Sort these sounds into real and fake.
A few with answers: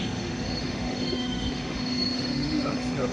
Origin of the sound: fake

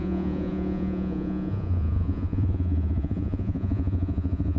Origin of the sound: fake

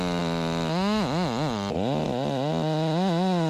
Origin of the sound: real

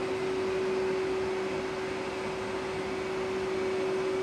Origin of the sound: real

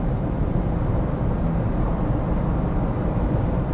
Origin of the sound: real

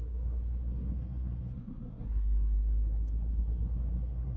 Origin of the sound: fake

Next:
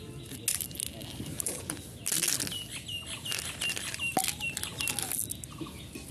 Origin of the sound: real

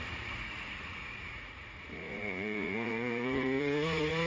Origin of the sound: fake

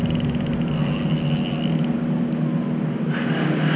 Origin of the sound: real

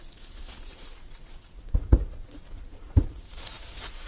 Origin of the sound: fake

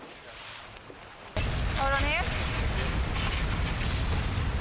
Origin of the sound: real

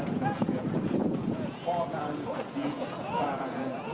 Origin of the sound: fake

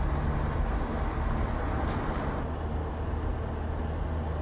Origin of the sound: real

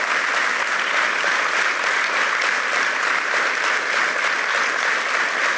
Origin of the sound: real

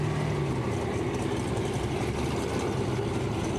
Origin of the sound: real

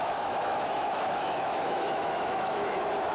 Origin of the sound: fake